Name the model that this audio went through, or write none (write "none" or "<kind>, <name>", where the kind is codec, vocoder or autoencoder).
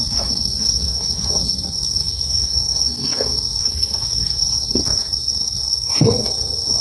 codec, SNAC